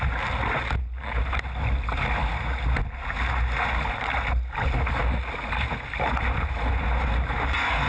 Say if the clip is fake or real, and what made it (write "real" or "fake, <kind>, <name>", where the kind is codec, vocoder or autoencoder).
real